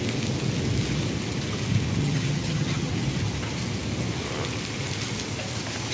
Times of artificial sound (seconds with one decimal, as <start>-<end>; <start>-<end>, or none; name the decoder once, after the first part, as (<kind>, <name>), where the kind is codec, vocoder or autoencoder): 2.0-2.9 (vocoder, HiFi-GAN)